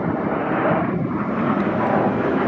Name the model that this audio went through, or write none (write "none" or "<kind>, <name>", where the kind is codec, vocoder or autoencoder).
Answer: none